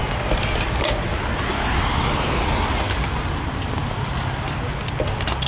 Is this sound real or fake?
real